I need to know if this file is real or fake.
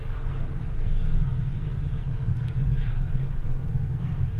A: fake